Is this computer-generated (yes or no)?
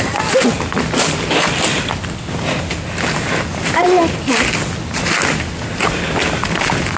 no